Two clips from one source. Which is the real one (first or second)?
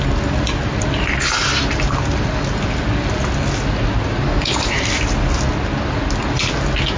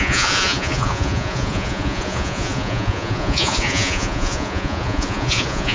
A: first